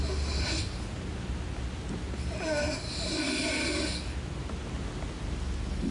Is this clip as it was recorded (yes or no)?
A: yes